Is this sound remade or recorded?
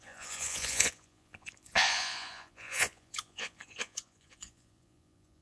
remade